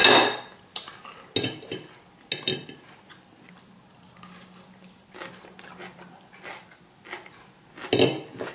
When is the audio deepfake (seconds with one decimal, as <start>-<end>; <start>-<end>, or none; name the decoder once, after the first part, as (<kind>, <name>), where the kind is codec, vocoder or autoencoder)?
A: none